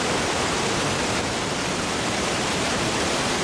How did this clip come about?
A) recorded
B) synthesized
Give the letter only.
B